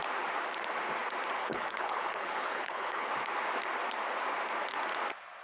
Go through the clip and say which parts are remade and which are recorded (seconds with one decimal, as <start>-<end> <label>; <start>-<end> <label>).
0.0-1.4 recorded; 1.4-3.1 remade; 3.1-5.4 recorded